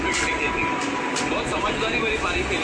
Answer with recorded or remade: recorded